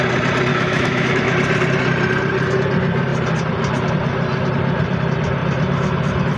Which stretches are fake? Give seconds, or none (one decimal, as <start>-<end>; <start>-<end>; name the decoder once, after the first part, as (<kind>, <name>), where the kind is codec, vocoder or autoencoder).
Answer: 0.5-1.3 (autoencoder, DAC-VAE)